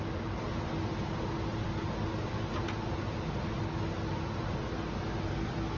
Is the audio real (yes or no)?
yes